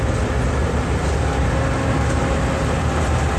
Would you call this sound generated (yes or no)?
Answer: no